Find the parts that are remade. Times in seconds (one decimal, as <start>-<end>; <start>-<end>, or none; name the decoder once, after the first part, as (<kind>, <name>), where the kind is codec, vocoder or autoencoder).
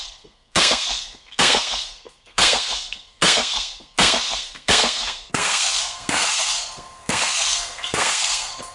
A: 0.0-8.7 (codec, SNAC)